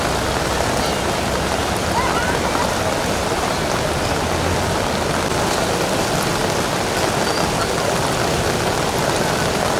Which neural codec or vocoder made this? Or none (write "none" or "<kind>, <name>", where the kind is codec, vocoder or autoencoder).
none